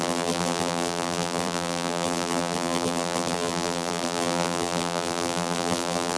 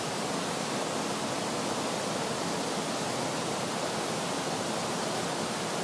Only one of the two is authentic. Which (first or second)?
second